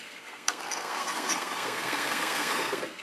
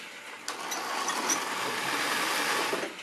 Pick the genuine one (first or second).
second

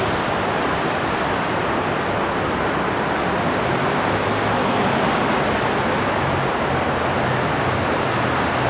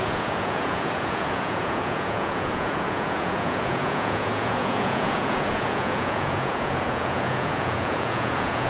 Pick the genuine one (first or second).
first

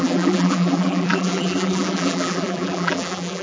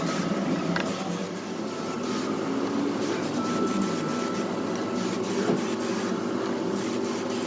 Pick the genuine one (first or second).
second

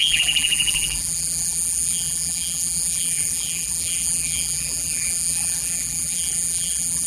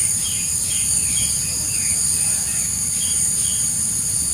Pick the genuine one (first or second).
second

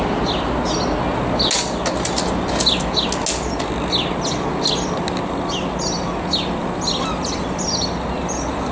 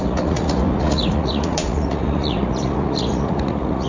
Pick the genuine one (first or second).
first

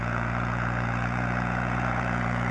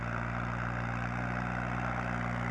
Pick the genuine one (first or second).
second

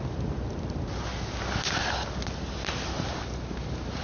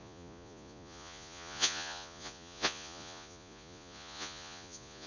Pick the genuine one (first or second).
first